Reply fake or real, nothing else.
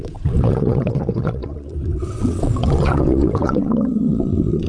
fake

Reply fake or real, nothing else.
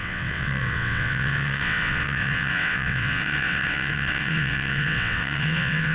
fake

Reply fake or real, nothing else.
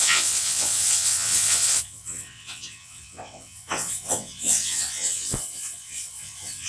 fake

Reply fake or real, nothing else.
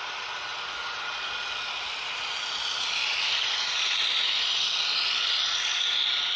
real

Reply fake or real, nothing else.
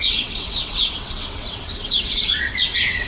fake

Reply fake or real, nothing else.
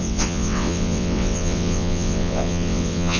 fake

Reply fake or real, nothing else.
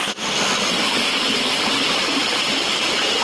real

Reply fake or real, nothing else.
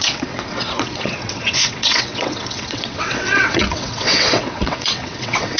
fake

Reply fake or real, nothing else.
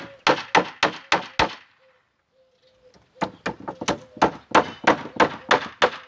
real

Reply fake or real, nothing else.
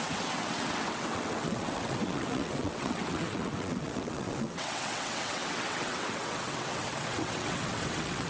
fake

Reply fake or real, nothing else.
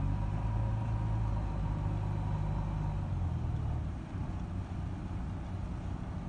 real